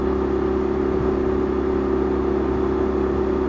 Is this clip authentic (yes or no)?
yes